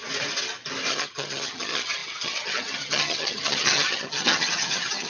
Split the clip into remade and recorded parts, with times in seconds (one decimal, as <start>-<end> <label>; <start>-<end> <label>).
0.0-0.9 recorded; 0.9-5.1 remade